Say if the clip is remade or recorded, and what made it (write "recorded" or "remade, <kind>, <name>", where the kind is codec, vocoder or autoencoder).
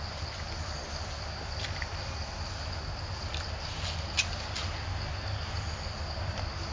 recorded